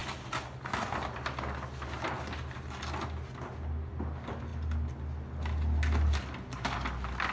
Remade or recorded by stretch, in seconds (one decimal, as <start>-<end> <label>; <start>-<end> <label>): 0.0-7.3 recorded